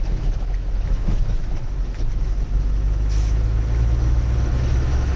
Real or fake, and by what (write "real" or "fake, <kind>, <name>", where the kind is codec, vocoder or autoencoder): fake, autoencoder, DAC-VAE